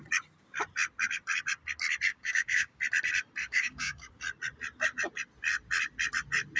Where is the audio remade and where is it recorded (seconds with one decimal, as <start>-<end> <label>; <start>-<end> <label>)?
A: 0.0-2.1 recorded; 2.1-2.8 remade; 2.8-3.4 recorded; 3.4-4.1 remade; 4.1-6.6 recorded